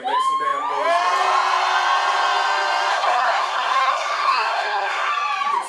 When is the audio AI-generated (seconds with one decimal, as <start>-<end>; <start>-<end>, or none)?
2.9-5.1